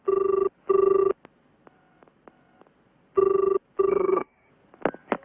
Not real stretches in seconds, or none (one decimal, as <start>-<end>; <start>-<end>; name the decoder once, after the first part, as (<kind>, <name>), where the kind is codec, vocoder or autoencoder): 3.9-4.5 (codec, SNAC)